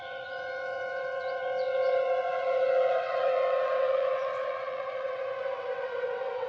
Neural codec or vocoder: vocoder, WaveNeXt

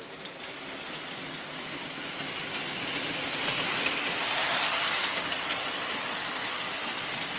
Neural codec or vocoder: none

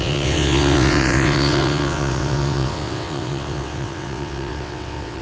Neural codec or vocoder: vocoder, WaveNeXt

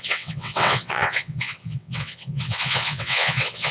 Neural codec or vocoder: vocoder, WaveNeXt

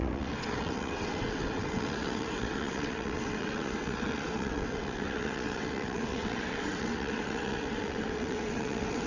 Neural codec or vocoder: vocoder, WaveNeXt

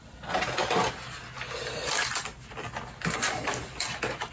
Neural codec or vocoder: none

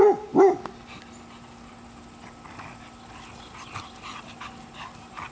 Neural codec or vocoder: none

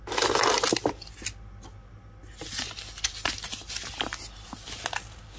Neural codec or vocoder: none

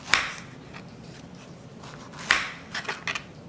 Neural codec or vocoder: none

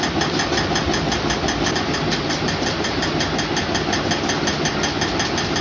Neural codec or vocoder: none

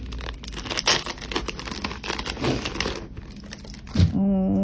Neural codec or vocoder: none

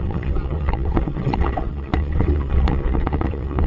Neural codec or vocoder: vocoder, WaveNeXt